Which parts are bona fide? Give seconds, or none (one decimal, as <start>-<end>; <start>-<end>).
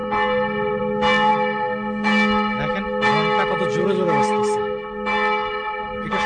0.0-3.8; 4.6-6.3